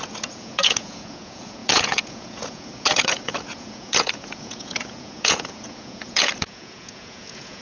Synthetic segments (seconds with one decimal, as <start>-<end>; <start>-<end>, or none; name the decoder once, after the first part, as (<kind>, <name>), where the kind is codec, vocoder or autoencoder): 0.0-7.6 (vocoder, Vocos)